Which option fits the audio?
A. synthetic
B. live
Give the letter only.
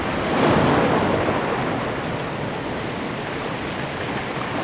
A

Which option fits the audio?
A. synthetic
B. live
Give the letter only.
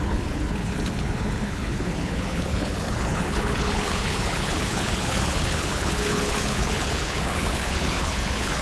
A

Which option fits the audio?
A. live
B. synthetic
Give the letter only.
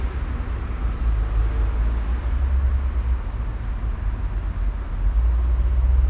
A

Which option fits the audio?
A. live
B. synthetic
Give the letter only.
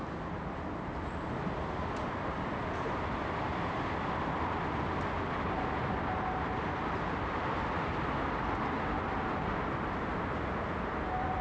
A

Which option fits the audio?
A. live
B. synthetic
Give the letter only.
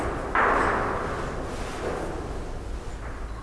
A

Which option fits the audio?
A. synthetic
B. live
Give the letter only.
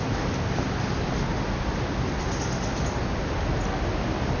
B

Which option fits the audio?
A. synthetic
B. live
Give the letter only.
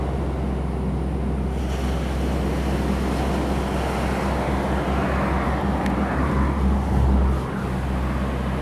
B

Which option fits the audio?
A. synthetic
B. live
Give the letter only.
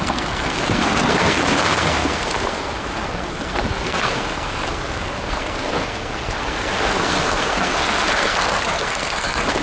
A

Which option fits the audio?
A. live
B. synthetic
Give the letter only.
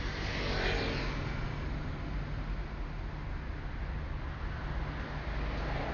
A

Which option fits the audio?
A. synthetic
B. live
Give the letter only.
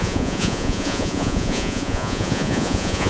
A